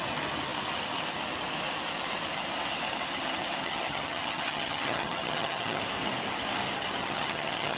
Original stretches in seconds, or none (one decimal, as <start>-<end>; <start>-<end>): 0.0-3.6; 5.8-7.0